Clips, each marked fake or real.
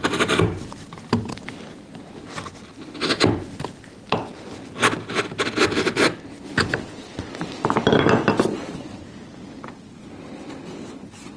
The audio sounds real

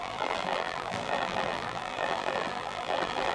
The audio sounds fake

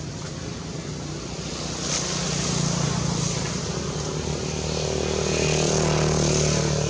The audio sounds real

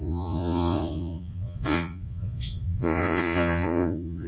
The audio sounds fake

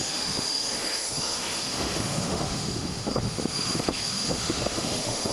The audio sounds fake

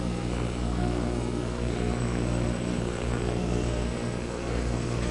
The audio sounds fake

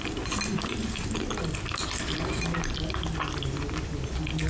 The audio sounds real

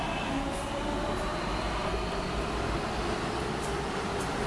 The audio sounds real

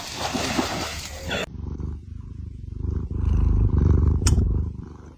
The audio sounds fake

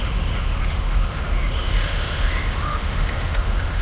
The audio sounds fake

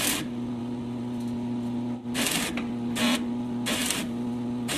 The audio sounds real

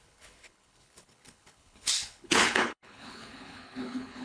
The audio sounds fake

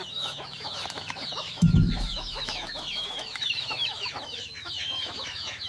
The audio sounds fake